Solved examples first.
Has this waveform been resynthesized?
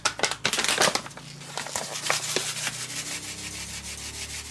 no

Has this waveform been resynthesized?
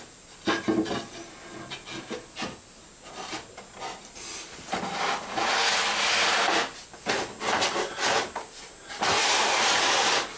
no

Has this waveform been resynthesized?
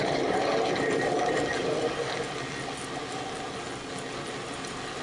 no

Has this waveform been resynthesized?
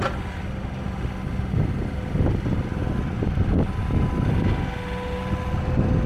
no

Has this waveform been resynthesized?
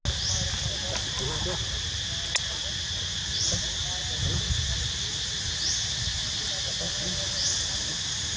no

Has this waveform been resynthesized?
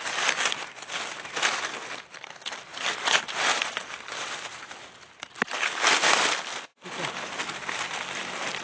no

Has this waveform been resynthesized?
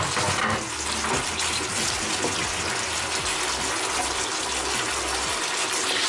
no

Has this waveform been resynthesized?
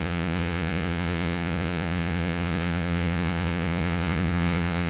yes